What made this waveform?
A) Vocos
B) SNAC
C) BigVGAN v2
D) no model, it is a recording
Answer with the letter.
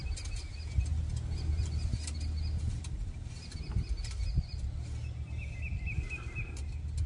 D